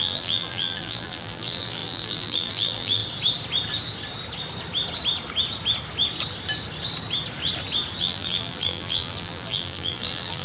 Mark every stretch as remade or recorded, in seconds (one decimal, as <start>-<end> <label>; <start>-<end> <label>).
0.0-3.0 remade; 3.0-8.0 recorded; 8.0-10.4 remade